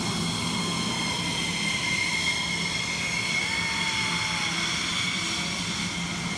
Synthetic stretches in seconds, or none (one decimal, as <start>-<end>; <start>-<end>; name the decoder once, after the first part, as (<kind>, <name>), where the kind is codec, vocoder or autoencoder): 0.6-1.1 (codec, SNAC)